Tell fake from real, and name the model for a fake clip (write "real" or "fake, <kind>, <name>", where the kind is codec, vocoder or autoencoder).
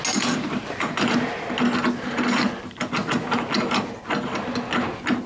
real